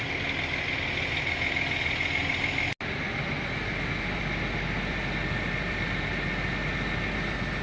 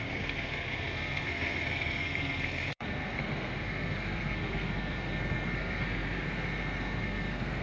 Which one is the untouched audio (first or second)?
first